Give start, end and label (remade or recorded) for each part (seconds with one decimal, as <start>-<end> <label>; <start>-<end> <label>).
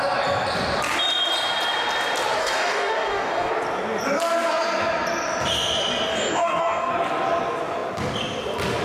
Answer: 0.0-2.4 recorded; 2.4-3.5 remade; 3.5-6.1 recorded; 6.1-6.9 remade; 6.9-8.8 recorded